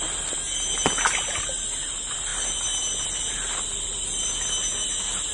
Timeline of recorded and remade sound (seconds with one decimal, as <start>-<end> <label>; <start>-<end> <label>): 0.0-5.3 recorded